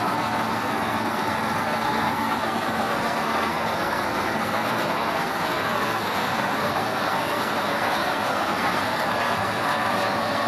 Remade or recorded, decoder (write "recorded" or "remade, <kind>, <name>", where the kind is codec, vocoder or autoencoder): remade, codec, SNAC